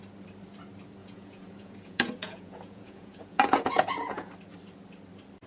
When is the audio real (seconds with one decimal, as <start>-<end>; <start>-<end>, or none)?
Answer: 0.0-1.0; 4.3-5.5

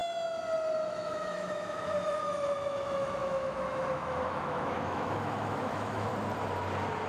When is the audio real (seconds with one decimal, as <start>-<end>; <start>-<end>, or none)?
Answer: 0.0-0.9; 6.1-7.1

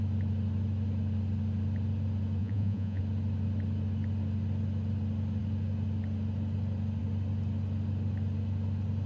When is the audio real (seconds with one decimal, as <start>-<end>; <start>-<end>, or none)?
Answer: 0.0-2.4; 3.0-9.1

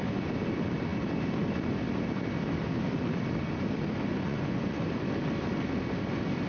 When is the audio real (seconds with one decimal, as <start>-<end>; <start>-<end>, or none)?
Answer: 0.0-4.1; 4.8-6.5

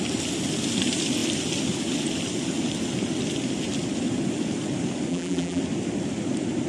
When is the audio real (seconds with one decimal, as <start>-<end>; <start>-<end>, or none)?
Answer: 0.0-5.1; 5.6-6.7

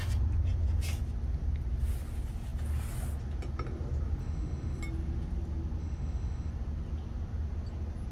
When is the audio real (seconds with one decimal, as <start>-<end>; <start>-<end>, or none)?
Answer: 0.0-4.2; 4.8-5.8; 6.5-8.1

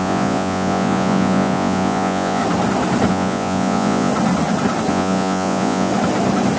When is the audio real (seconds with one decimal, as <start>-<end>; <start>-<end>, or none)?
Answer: 2.4-3.1; 4.1-4.9; 5.9-6.6

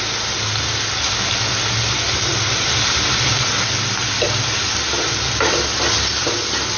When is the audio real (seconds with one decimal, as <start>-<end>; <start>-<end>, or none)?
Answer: 0.0-6.8